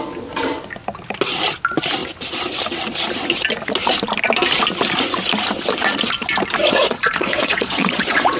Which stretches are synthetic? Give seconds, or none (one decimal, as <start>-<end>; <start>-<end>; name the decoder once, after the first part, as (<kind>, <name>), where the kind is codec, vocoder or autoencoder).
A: 6.6-8.4 (vocoder, Vocos)